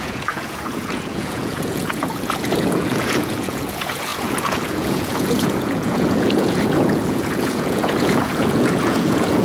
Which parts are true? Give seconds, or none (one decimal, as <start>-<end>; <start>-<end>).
none